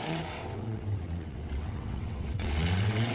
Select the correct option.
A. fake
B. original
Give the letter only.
A